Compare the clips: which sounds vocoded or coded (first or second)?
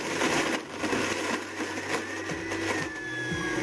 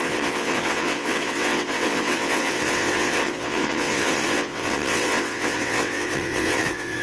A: second